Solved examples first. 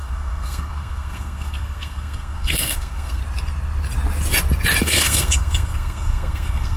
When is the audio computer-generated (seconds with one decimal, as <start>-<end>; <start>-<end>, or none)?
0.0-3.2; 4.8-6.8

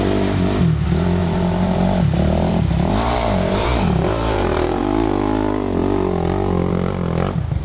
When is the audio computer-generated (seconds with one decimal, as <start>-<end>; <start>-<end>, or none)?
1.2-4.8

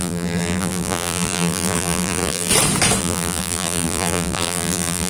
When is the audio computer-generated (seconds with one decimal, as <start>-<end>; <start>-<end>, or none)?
0.0-2.5; 3.0-5.1

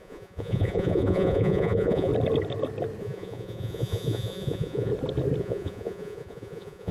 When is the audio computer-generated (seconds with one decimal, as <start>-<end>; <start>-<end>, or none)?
0.0-2.1; 3.0-4.9; 5.4-6.9